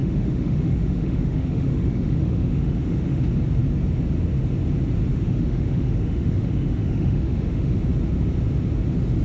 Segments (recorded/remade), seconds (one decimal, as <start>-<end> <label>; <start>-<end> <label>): 0.0-3.2 remade; 3.2-5.1 recorded; 5.1-7.8 remade; 7.8-9.2 recorded